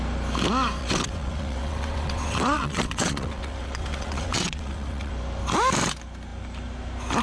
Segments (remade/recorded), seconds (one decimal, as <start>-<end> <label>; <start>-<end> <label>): 0.0-0.8 recorded; 0.8-5.1 remade; 5.1-7.2 recorded